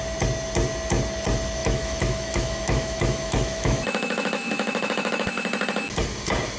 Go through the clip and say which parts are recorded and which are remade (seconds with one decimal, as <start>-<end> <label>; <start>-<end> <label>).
0.0-1.6 recorded; 1.6-5.3 remade; 5.3-6.6 recorded